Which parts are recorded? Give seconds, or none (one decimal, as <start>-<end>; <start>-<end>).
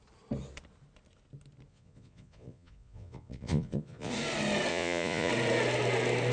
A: 0.0-1.7; 4.1-4.7; 5.3-6.3